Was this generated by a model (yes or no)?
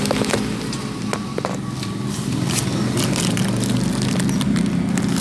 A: no